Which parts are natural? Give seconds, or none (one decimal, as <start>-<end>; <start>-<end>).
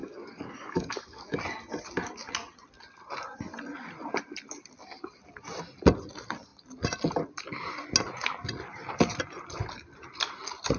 1.4-10.8